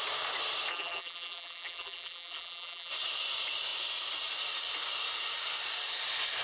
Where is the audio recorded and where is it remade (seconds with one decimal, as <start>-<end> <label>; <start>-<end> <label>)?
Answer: 0.0-0.7 recorded; 0.7-2.9 remade; 2.9-6.4 recorded